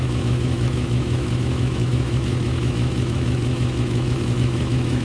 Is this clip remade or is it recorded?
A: remade